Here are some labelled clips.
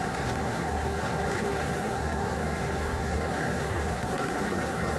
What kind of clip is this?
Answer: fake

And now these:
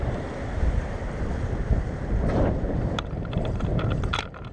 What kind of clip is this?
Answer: fake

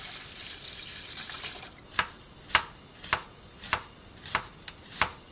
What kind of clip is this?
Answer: real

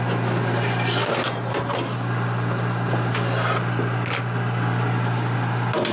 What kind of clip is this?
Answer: real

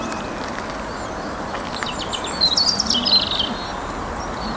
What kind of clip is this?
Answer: real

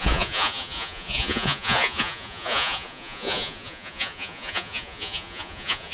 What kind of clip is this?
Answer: fake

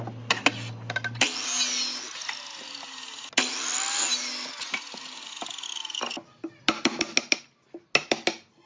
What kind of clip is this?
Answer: real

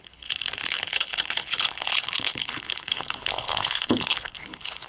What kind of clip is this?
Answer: fake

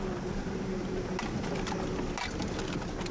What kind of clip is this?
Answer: real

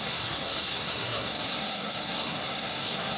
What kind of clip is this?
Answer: fake